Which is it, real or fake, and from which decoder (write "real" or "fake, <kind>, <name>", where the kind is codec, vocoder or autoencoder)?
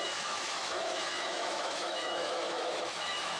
fake, autoencoder, DAC-VAE